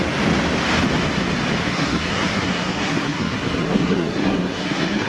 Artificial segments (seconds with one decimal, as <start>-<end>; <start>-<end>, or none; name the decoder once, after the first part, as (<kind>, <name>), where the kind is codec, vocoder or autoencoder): 1.6-5.1 (codec, SNAC)